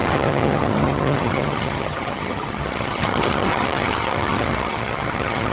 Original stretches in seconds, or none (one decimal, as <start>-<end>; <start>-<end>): none